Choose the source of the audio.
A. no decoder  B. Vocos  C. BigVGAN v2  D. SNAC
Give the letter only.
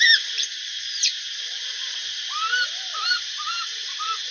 C